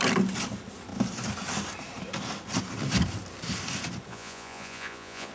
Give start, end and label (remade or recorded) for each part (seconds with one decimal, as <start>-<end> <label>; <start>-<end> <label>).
0.0-4.1 recorded; 4.1-5.3 remade